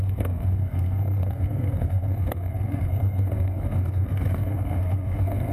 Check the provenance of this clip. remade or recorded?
remade